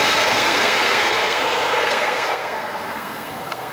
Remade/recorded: remade